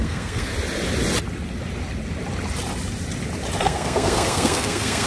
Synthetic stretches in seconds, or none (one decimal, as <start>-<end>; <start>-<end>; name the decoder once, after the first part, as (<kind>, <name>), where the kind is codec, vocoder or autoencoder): 0.0-0.5 (codec, SNAC); 3.6-5.1